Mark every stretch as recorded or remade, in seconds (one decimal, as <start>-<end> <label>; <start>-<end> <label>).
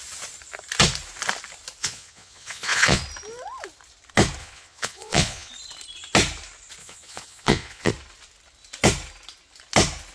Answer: 0.0-1.8 recorded; 1.8-3.0 remade; 3.0-4.4 recorded; 4.4-5.5 remade; 5.5-6.8 recorded; 6.8-7.9 remade; 7.9-10.1 recorded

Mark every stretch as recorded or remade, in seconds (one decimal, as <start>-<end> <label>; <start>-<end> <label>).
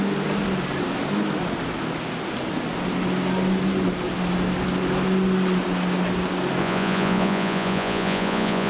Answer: 0.0-6.6 recorded; 6.6-8.7 remade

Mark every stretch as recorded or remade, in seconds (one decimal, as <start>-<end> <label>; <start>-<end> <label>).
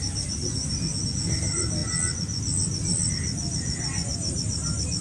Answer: 0.0-5.0 recorded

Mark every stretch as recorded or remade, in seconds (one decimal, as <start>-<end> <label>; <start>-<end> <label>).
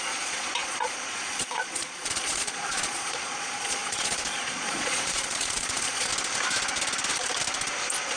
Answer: 0.0-6.1 remade; 6.1-8.2 recorded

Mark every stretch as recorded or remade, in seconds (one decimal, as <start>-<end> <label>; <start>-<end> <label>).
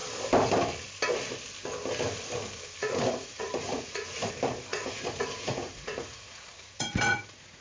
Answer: 0.0-2.8 recorded; 2.8-4.3 remade; 4.3-4.7 recorded; 4.7-7.6 remade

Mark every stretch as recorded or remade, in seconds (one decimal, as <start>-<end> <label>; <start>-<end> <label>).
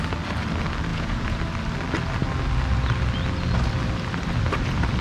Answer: 0.0-0.9 recorded; 0.9-1.4 remade; 1.4-5.0 recorded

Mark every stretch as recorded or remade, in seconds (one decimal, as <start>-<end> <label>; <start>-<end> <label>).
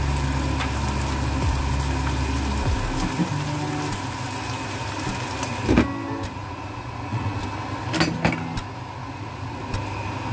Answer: 0.0-6.4 recorded; 6.4-7.4 remade; 7.4-9.0 recorded; 9.0-9.6 remade; 9.6-10.3 recorded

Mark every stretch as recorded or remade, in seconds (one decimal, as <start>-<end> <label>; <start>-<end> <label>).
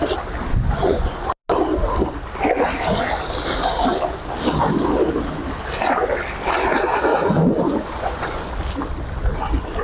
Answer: 0.0-0.5 recorded; 0.5-1.3 remade; 1.3-7.1 recorded; 7.1-8.5 remade; 8.5-9.8 recorded